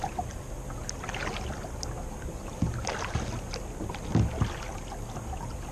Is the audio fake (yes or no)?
no